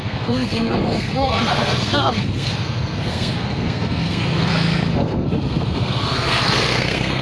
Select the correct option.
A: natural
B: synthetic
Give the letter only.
B